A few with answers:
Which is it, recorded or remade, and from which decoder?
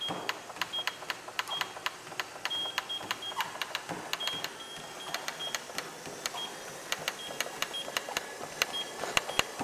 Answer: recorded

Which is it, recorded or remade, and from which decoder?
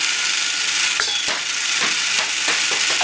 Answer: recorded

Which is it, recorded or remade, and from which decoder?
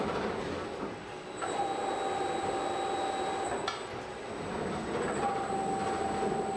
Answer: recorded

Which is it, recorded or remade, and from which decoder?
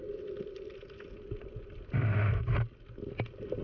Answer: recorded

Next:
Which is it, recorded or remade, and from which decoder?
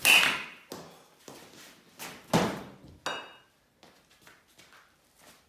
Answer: recorded